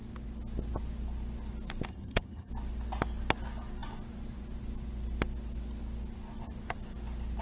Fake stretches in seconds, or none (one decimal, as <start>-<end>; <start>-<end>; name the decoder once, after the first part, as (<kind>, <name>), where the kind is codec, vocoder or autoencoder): 1.9-2.5 (vocoder, HiFi-GAN)